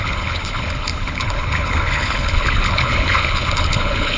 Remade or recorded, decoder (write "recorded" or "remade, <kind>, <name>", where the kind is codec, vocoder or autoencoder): remade, codec, HILCodec